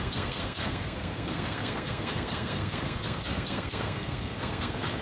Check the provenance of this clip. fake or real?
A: fake